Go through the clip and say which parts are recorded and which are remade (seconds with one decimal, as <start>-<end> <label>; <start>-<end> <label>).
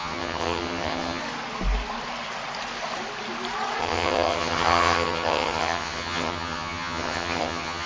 0.0-1.2 remade; 1.2-3.8 recorded; 3.8-7.9 remade